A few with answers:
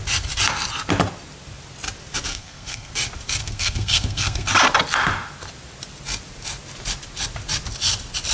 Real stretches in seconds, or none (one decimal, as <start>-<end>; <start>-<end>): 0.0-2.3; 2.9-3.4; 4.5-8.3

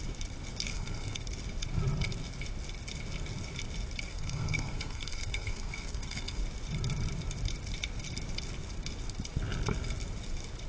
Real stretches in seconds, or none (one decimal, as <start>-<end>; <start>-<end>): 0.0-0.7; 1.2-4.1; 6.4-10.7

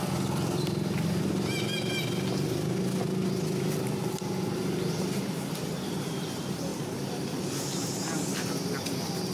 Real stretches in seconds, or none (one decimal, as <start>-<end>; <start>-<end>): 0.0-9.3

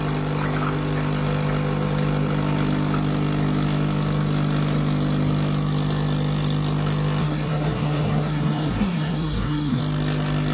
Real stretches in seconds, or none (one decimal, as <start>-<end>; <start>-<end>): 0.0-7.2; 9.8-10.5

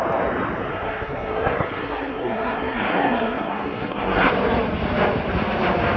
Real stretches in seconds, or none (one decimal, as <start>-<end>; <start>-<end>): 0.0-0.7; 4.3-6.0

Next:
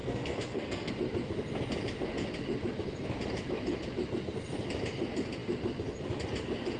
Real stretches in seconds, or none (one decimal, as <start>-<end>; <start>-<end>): 0.9-6.8